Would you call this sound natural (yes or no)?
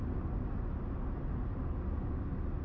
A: yes